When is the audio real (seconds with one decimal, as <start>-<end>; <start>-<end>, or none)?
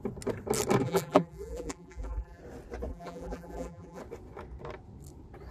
0.0-0.8; 2.4-2.9; 4.0-5.5